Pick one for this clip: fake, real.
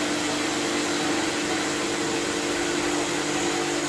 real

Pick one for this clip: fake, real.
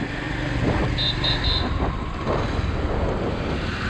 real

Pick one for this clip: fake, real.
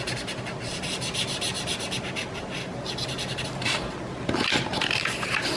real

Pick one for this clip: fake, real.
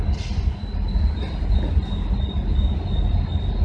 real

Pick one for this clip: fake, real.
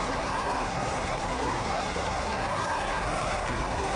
fake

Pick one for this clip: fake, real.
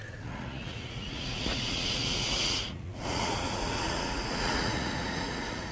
fake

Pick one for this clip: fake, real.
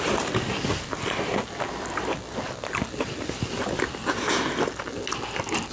real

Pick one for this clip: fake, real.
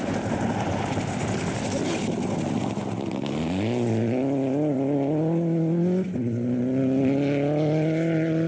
real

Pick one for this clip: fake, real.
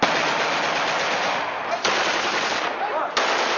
real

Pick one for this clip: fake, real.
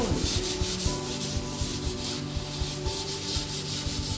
real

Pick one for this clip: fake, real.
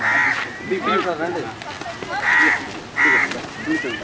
real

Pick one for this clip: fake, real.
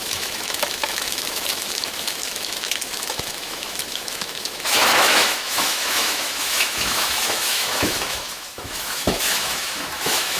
fake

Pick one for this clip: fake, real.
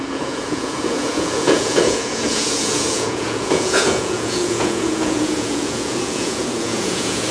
fake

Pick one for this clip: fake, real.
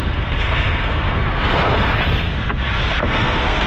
fake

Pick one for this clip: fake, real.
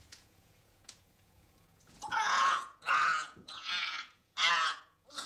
fake